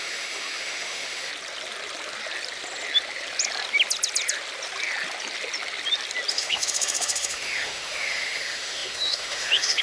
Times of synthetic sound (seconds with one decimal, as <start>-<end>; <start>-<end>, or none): 0.0-1.3; 6.3-9.8